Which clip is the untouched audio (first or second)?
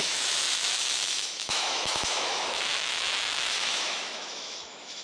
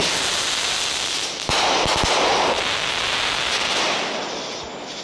second